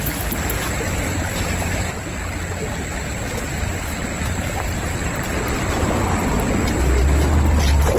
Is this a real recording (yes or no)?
yes